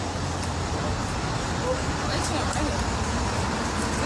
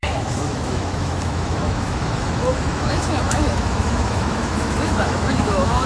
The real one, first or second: first